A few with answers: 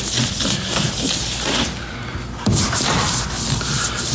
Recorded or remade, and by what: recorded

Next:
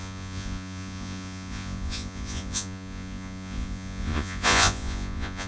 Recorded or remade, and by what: remade, vocoder, Vocos